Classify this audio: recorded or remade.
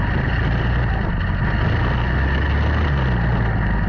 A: recorded